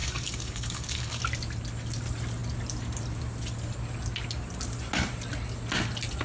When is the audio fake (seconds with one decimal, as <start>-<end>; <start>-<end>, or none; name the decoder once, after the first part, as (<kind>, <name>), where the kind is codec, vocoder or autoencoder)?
0.0-1.2 (codec, DAC)